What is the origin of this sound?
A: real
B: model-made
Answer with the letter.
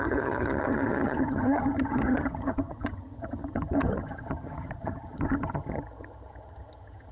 B